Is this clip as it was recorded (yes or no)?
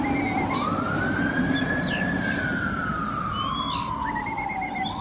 yes